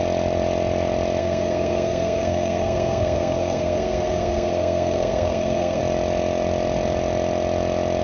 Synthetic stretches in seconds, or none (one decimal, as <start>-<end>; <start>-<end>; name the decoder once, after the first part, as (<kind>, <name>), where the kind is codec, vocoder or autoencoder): 1.2-5.8 (codec, SNAC)